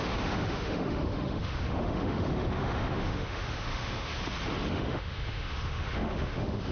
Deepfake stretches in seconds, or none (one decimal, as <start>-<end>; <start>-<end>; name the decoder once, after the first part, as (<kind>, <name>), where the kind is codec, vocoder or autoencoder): 0.0-4.1 (autoencoder, DAC-VAE); 4.7-6.7